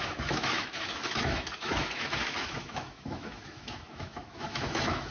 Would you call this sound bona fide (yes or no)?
no